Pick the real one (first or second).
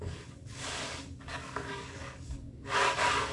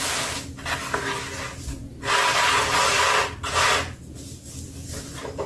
second